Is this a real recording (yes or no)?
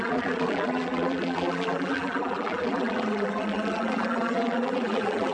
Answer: no